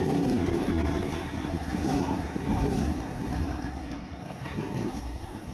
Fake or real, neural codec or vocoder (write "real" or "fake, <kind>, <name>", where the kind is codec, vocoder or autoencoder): fake, codec, SNAC